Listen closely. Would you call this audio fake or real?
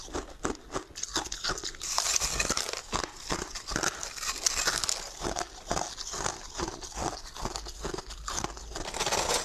real